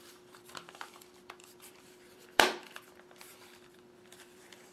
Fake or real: fake